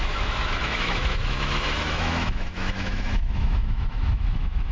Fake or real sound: fake